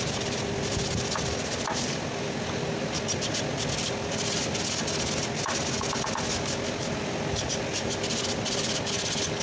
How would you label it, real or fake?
real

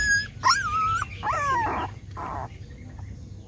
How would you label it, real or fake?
real